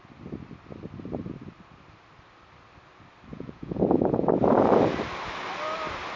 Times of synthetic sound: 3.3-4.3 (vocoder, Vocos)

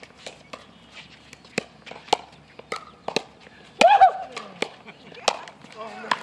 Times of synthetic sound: none

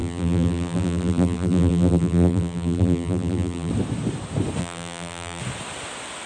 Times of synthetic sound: 0.0-3.7 (vocoder, BigVGAN v2); 4.6-5.4

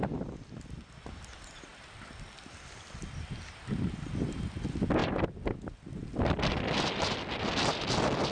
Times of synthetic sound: none

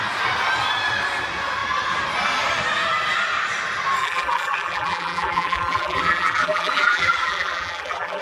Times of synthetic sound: 4.0-8.2 (vocoder, BigVGAN v2)

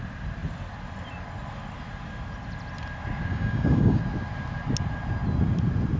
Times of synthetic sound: 3.3-4.0 (codec, DAC)

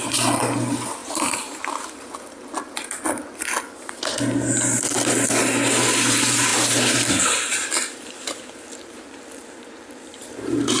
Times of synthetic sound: 1.0-1.9 (vocoder, BigVGAN v2); 7.5-10.8